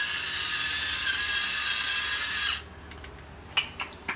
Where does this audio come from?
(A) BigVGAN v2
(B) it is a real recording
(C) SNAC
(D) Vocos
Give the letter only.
B